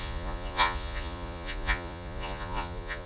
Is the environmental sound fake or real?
fake